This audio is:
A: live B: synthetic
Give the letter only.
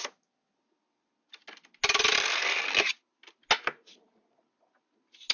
A